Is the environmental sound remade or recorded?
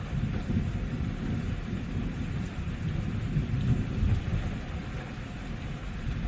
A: recorded